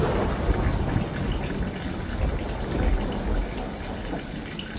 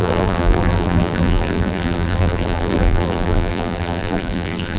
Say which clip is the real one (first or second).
first